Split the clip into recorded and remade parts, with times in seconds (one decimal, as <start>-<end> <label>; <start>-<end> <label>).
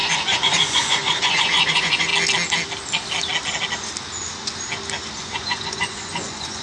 0.0-2.1 remade; 2.1-5.2 recorded; 5.2-6.6 remade